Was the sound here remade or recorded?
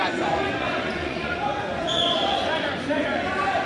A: remade